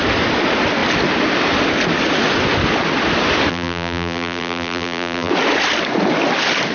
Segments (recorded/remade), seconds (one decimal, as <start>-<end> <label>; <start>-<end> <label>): 0.0-3.5 recorded; 3.5-5.3 remade; 5.3-6.7 recorded